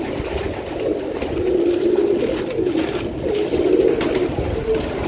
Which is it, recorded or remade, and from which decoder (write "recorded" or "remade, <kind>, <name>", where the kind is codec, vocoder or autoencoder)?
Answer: recorded